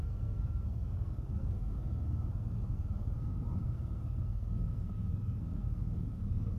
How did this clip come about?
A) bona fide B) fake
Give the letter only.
B